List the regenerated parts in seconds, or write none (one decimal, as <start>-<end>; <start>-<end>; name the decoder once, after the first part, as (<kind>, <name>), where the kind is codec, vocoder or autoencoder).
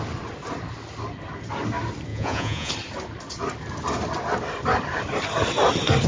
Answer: 2.1-2.7 (vocoder, Vocos)